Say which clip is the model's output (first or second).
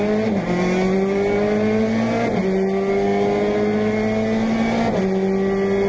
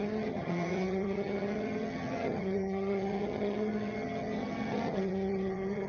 second